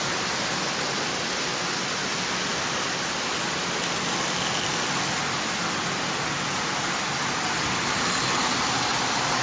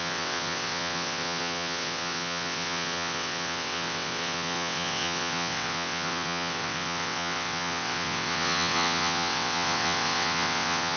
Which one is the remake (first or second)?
second